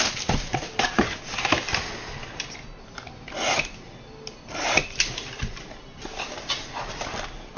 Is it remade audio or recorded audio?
recorded